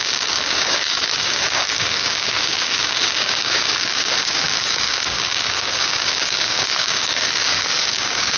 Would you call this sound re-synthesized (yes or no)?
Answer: yes